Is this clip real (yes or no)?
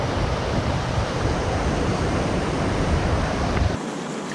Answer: no